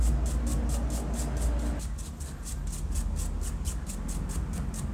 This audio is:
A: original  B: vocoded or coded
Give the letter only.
A